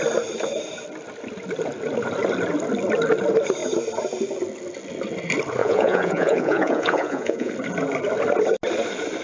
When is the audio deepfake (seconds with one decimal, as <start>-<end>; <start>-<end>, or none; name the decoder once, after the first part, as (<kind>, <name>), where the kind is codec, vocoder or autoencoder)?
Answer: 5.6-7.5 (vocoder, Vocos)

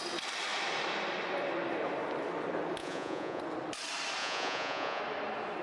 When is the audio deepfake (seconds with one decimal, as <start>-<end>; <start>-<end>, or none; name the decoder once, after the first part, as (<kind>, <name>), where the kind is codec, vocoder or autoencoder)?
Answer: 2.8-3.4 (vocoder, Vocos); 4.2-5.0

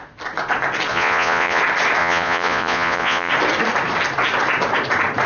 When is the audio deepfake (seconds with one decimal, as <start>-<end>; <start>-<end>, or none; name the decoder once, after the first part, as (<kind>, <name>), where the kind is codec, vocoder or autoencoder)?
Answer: 0.9-1.6 (vocoder, Vocos); 2.0-3.3

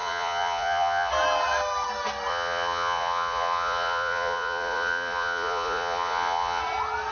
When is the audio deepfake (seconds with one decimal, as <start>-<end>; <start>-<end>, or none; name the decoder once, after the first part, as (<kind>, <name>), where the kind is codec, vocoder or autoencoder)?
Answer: 0.0-1.1 (vocoder, Vocos); 2.3-6.6